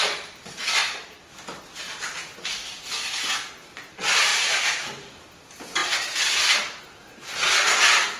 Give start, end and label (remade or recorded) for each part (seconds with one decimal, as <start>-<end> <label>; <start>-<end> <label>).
0.0-4.3 recorded; 4.3-5.1 remade; 5.1-8.2 recorded